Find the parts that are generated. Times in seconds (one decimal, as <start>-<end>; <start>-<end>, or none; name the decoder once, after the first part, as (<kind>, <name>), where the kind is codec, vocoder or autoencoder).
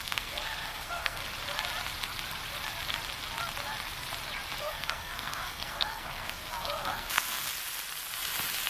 0.0-1.2 (codec, SNAC); 4.6-7.5